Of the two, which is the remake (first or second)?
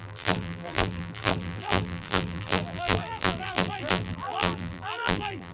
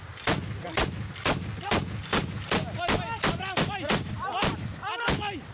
first